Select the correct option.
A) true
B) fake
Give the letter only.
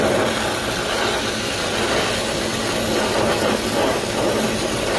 A